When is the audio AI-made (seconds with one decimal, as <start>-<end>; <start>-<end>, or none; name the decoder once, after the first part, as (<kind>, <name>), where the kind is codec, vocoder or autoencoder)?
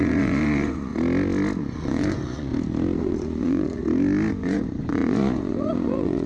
0.0-0.9 (vocoder, Vocos); 1.6-2.5; 3.0-3.8; 4.3-6.3